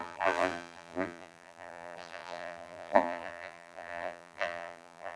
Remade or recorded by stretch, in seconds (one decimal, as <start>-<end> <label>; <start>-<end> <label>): 0.0-5.2 remade